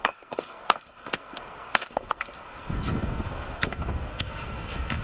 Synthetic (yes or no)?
yes